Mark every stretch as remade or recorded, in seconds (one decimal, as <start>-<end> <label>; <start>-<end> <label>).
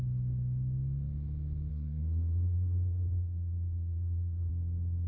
0.0-1.7 recorded; 1.7-4.5 remade; 4.5-5.1 recorded